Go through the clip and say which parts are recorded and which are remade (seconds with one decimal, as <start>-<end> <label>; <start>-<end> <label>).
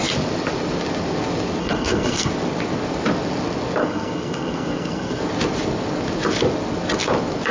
0.0-1.6 recorded; 1.6-2.3 remade; 2.3-3.8 recorded; 3.8-5.2 remade; 5.2-7.5 recorded